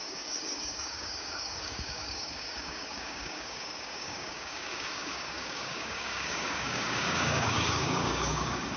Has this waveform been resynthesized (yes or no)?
yes